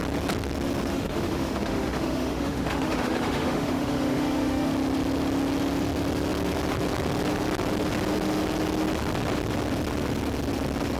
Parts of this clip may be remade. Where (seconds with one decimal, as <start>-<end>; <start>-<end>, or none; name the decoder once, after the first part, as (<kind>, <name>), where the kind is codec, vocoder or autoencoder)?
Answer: 0.9-4.7 (autoencoder, DAC-VAE)